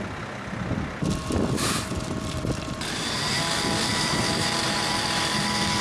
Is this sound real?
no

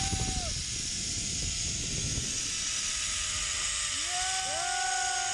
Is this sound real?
yes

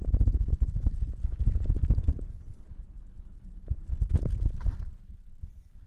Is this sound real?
yes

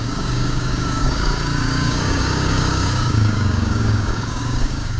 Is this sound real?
no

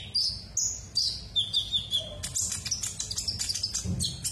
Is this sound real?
yes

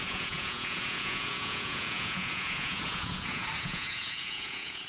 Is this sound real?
no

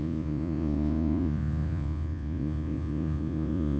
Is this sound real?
no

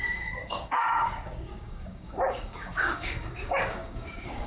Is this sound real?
no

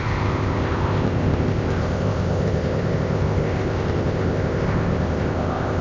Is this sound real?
no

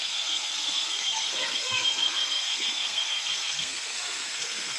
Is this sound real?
no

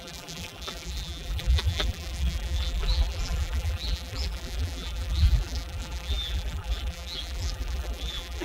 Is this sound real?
no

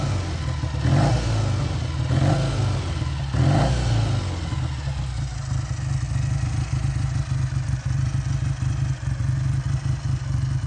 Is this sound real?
yes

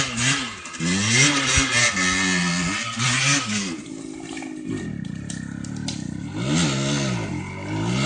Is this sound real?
yes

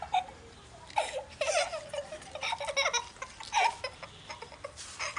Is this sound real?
yes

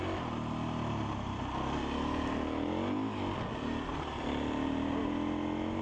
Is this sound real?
yes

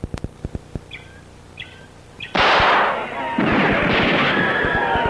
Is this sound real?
yes